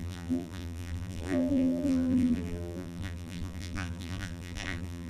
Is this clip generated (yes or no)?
yes